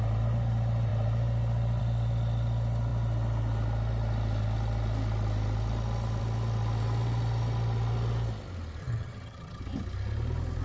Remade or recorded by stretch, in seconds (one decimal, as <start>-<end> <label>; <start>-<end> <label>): 0.0-8.8 recorded; 8.8-9.6 remade; 9.6-10.6 recorded